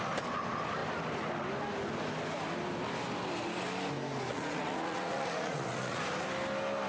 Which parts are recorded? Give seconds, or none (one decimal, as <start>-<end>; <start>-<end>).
0.0-4.3; 6.0-6.9